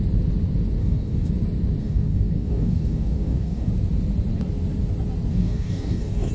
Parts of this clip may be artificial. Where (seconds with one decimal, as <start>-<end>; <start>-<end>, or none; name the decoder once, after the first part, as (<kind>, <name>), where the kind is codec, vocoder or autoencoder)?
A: 0.8-1.3 (codec, DAC); 1.8-3.7; 5.3-6.3